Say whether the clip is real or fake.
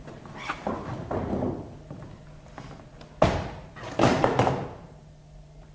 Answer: real